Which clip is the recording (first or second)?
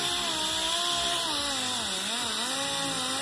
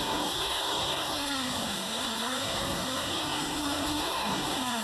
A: first